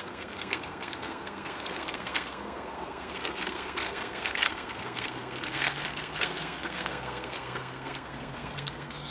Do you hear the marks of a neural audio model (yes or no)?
yes